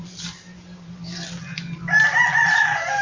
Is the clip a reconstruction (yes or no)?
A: no